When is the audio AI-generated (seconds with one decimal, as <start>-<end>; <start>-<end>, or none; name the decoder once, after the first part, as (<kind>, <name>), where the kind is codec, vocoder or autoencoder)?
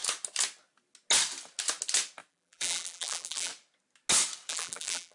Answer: 2.3-3.5 (vocoder, BigVGAN v2); 4.5-5.1